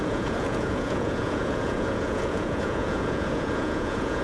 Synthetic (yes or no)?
yes